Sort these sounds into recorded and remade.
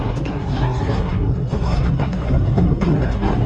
remade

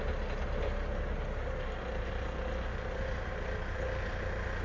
recorded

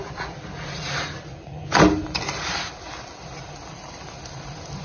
recorded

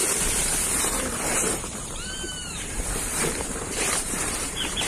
remade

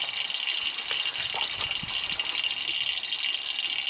recorded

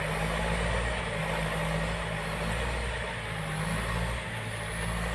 recorded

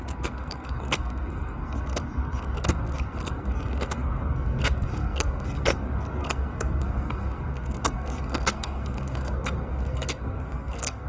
remade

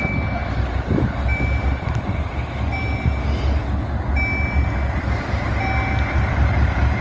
recorded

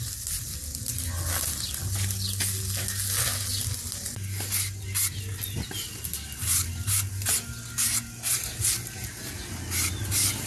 recorded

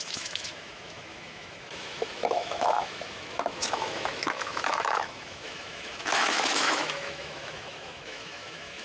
remade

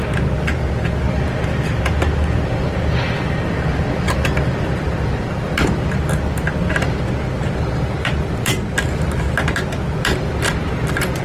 recorded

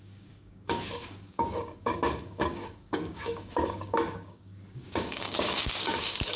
remade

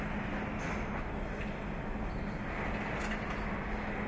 recorded